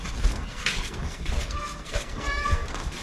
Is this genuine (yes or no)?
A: no